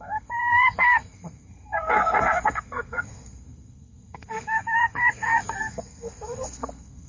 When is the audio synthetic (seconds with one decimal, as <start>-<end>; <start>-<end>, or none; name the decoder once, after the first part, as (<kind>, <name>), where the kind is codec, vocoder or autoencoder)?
0.0-7.1 (codec, SNAC)